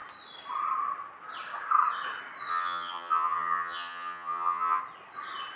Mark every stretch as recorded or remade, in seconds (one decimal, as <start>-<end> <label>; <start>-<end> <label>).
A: 0.0-2.5 recorded; 2.5-4.8 remade; 4.8-5.6 recorded